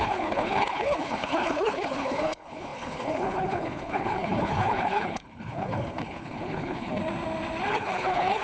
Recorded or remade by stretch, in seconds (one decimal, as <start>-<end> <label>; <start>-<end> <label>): 0.0-7.0 remade; 7.0-7.7 recorded; 7.7-8.4 remade

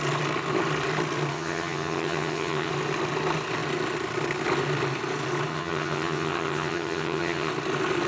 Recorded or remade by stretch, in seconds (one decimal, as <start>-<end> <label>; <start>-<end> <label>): 0.0-1.3 recorded; 1.3-2.7 remade; 2.7-5.5 recorded; 5.5-7.5 remade; 7.5-8.1 recorded

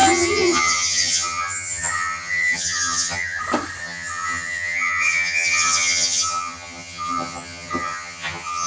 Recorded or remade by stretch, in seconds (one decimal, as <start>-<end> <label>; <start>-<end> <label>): 0.0-3.4 remade; 3.4-3.8 recorded; 3.8-8.7 remade